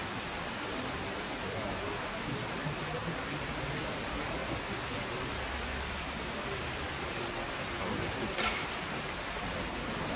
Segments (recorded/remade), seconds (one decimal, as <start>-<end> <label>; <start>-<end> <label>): 0.0-2.0 recorded; 2.0-3.0 remade; 3.0-3.5 recorded; 3.5-4.4 remade; 4.4-8.5 recorded; 8.5-10.2 remade